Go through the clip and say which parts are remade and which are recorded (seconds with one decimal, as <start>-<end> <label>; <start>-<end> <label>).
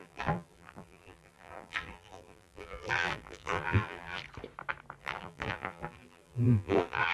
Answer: 0.0-4.2 remade; 4.2-5.0 recorded; 5.0-7.1 remade